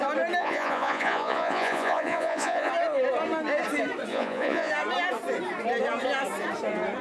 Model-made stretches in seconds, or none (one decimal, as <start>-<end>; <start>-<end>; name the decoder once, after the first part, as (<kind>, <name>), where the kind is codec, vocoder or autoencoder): 0.4-2.7 (vocoder, Vocos); 4.1-4.7